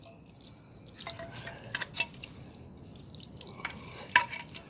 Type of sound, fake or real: real